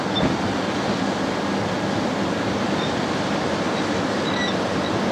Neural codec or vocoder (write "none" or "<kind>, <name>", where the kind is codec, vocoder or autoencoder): none